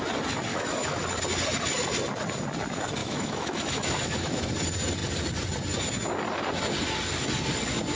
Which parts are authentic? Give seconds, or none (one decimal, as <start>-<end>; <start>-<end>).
0.0-0.5; 1.0-3.0; 4.5-8.0